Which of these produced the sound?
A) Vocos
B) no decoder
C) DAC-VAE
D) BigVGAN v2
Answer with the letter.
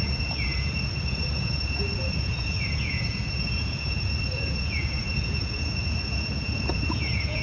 A